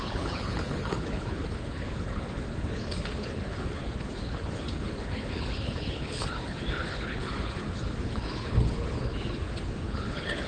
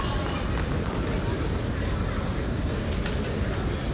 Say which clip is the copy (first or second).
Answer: first